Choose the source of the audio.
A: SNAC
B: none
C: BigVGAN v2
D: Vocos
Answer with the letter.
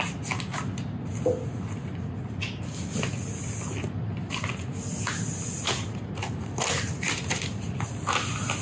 B